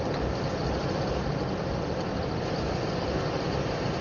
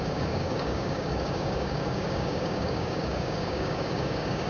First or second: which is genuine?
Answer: first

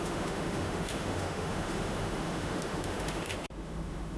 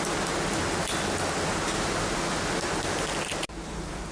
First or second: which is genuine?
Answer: second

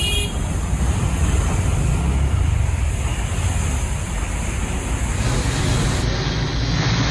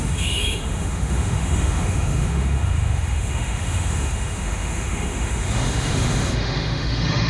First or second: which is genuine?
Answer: first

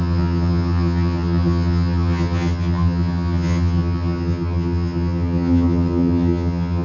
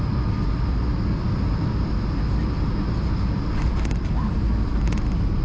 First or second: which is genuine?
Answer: second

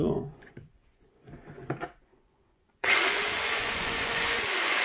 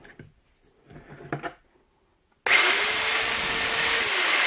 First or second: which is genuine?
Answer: second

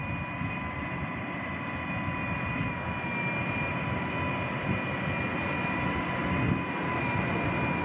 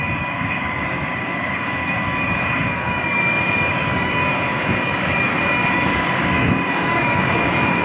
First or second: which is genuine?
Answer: first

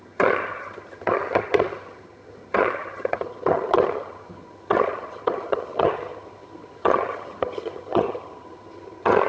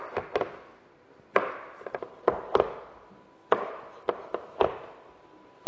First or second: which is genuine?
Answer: second